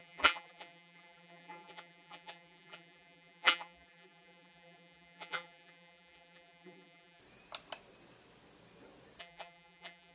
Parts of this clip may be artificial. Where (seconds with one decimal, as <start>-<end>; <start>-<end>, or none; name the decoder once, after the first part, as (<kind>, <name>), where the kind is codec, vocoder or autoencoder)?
0.0-7.2 (vocoder, BigVGAN v2); 9.2-10.1